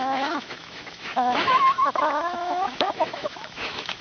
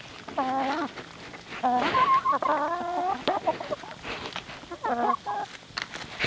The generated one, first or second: first